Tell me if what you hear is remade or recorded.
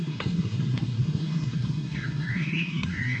remade